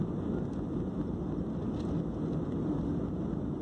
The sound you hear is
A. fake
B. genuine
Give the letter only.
B